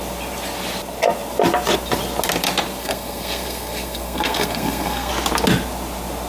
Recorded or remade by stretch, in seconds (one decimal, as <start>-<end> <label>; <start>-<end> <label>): 0.0-2.8 recorded; 2.8-5.1 remade; 5.1-6.3 recorded

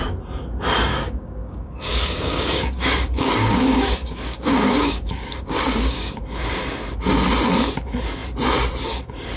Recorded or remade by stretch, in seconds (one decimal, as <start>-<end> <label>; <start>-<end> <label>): 0.0-0.9 recorded; 0.9-6.1 remade; 6.1-9.4 recorded